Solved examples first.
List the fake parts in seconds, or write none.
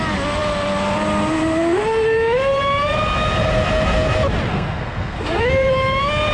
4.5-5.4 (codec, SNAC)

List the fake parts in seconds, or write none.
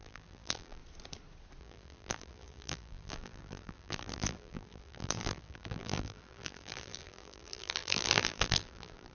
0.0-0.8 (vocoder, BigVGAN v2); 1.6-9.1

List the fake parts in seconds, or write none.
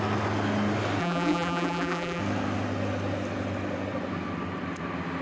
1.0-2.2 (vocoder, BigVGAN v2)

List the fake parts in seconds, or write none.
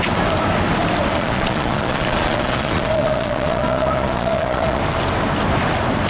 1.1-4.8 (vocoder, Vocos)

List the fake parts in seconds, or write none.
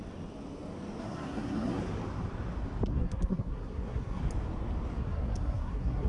1.0-1.8 (codec, SNAC); 2.9-4.2; 5.0-6.1